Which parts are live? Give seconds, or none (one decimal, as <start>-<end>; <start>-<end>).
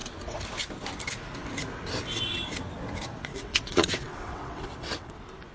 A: 0.0-3.3; 5.1-5.5